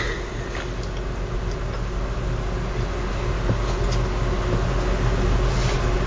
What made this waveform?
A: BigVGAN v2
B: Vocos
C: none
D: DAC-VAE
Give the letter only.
C